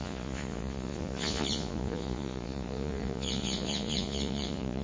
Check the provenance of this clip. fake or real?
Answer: fake